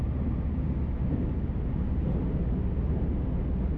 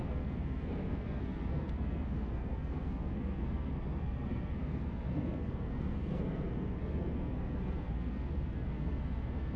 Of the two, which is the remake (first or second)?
second